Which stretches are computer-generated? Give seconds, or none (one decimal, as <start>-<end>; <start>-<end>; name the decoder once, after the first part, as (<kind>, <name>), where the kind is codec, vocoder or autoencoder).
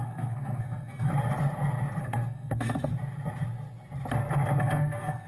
0.0-1.1 (codec, SNAC); 2.0-2.9; 4.6-5.3